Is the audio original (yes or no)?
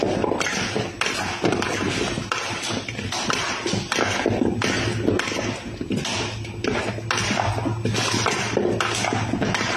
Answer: yes